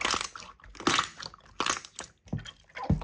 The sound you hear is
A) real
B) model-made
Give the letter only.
A